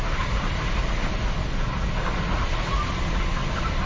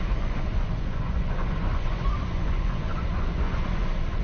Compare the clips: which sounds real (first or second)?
first